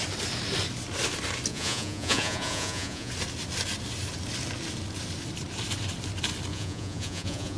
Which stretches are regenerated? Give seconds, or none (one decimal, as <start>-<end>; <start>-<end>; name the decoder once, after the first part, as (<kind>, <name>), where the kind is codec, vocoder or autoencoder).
1.5-3.1 (vocoder, Vocos); 6.5-7.6